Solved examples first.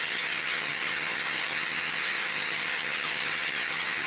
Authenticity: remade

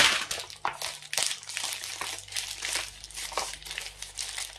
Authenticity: recorded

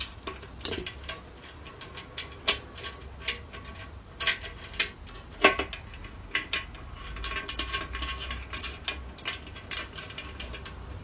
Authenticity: recorded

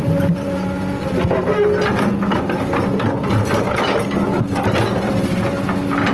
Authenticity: recorded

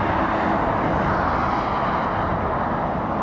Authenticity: recorded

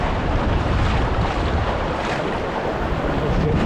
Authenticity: recorded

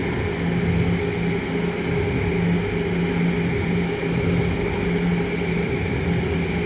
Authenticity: recorded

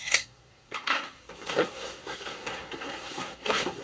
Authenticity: remade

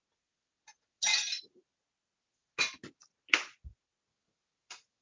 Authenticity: recorded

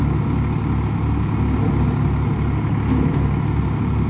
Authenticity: recorded